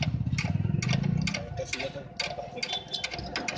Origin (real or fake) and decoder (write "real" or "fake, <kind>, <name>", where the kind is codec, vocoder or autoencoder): real